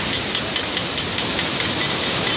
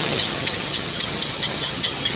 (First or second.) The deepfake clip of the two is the second